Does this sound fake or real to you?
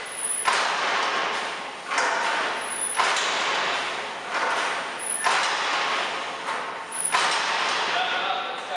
real